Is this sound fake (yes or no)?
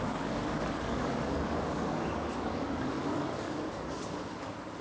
yes